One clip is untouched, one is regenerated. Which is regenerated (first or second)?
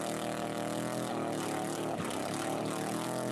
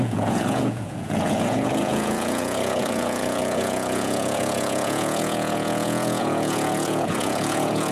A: second